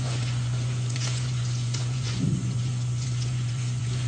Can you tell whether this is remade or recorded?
remade